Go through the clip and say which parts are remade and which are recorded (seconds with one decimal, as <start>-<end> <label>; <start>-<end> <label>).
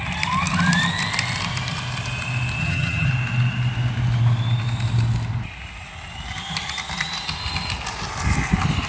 0.0-2.6 recorded; 2.6-3.1 remade; 3.1-8.9 recorded